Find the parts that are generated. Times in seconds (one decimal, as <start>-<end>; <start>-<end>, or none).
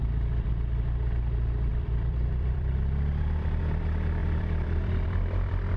1.7-3.6; 4.2-5.8